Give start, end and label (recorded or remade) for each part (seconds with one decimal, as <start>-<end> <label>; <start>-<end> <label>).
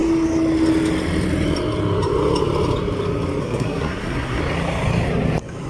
0.0-3.4 recorded; 3.4-4.4 remade; 4.4-5.7 recorded